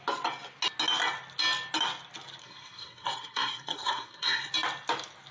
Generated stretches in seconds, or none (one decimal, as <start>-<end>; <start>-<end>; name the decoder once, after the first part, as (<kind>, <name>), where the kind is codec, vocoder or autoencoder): 2.4-4.5 (codec, SNAC)